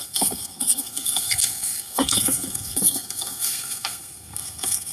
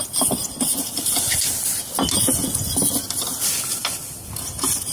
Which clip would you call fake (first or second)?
first